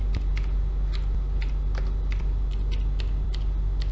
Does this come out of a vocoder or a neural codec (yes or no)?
no